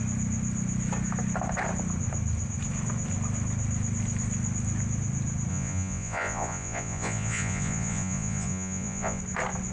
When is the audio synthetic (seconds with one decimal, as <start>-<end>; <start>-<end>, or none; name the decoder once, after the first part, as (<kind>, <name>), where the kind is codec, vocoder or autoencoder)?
5.5-9.2 (vocoder, Vocos)